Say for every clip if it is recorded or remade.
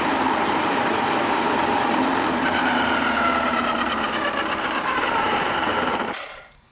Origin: remade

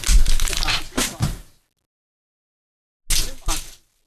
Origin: recorded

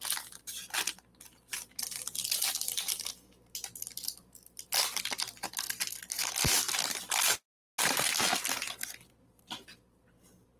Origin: recorded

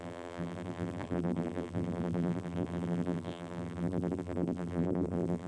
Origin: remade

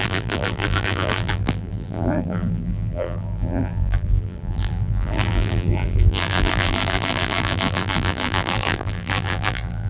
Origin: remade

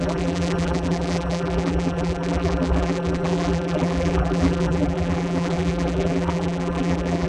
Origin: remade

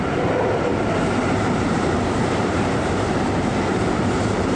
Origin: remade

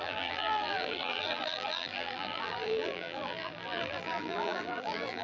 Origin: remade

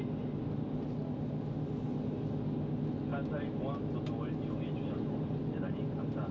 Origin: recorded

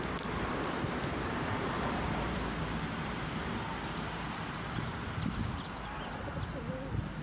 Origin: remade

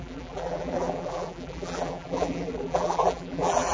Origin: remade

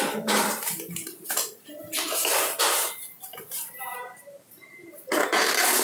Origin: remade